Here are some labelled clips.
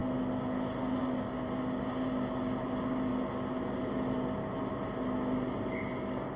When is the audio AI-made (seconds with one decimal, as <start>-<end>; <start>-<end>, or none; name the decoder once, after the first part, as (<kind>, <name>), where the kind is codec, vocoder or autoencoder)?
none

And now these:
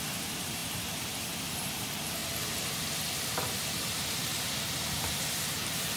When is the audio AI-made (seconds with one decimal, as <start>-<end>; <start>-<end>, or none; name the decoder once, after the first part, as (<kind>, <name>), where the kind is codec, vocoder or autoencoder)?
0.0-2.2 (vocoder, BigVGAN v2); 3.5-6.0

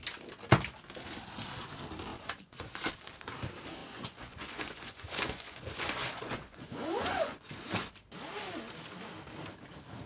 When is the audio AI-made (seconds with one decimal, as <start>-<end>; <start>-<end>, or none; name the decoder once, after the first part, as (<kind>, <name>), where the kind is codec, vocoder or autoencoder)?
2.1-2.9 (vocoder, Vocos); 3.8-7.9

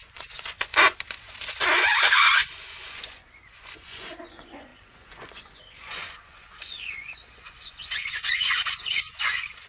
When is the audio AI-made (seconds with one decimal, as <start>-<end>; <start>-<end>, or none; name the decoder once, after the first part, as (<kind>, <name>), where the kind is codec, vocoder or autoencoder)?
0.0-9.7 (vocoder, Vocos)

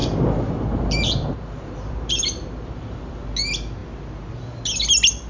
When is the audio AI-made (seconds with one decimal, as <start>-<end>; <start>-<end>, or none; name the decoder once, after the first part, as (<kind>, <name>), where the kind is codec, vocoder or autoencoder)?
0.0-3.2 (vocoder, BigVGAN v2)